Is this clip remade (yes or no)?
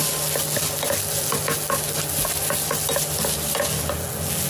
no